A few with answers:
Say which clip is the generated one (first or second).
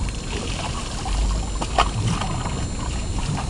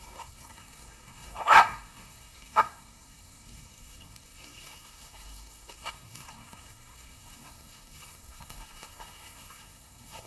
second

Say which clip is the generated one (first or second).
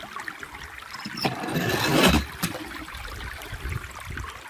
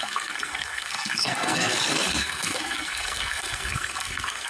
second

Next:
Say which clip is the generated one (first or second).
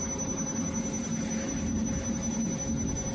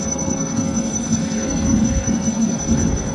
second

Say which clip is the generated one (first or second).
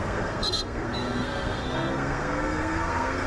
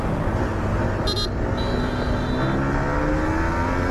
first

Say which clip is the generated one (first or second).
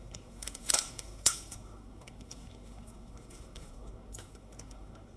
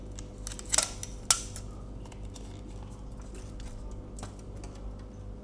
first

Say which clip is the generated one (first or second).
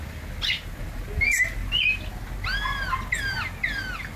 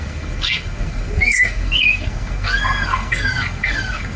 second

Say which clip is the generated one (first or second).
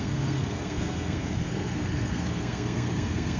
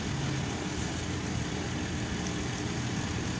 first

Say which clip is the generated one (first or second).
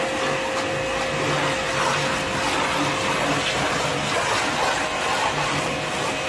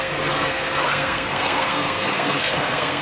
second